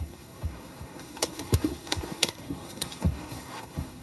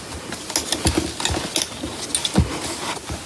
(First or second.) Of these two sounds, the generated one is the first